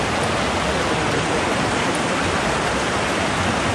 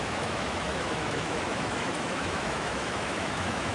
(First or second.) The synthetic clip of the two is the second